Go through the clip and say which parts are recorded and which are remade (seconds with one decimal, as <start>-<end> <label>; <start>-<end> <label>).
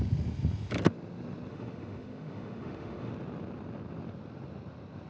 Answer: 0.0-1.5 recorded; 1.5-3.1 remade; 3.1-5.1 recorded